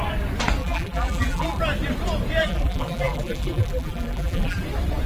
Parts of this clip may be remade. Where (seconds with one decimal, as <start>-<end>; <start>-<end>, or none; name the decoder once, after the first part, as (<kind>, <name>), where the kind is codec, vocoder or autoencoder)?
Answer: 0.6-1.6 (vocoder, BigVGAN v2); 2.4-4.6